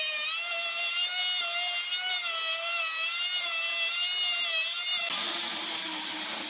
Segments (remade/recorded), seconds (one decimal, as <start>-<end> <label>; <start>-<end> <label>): 0.0-6.5 recorded